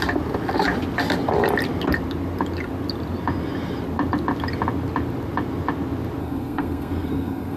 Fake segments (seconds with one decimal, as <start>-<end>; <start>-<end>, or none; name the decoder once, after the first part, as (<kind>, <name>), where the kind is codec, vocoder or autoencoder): 6.2-7.6 (codec, SNAC)